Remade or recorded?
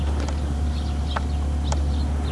recorded